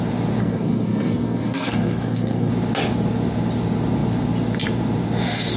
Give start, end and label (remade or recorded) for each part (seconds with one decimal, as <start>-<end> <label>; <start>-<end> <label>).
0.0-0.4 recorded; 0.4-2.5 remade; 2.5-5.6 recorded